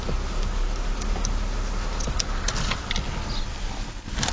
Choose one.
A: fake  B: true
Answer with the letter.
B